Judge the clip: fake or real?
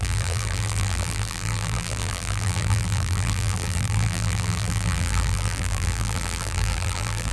fake